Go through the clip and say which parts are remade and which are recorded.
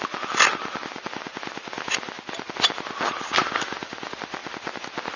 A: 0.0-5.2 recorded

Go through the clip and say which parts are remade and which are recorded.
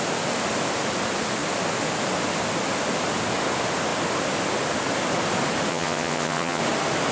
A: 0.0-5.7 recorded; 5.7-6.6 remade; 6.6-7.1 recorded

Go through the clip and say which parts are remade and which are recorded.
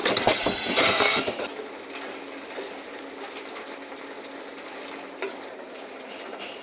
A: 0.0-6.6 recorded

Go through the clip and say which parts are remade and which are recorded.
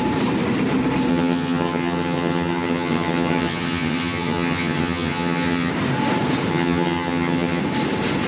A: 0.0-1.1 recorded; 1.1-5.7 remade; 5.7-6.5 recorded; 6.5-7.6 remade; 7.6-8.3 recorded